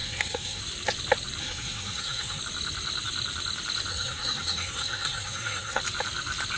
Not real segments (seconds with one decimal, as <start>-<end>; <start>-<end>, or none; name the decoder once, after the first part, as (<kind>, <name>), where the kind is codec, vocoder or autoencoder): 0.0-0.6 (codec, SNAC); 1.4-2.4; 3.9-5.8